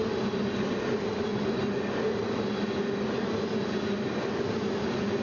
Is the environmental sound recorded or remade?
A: recorded